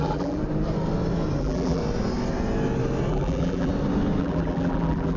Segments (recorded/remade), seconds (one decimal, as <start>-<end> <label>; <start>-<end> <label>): 0.0-0.4 remade; 0.4-1.4 recorded; 1.4-1.8 remade; 1.8-3.1 recorded; 3.1-3.7 remade; 3.7-4.2 recorded; 4.2-5.2 remade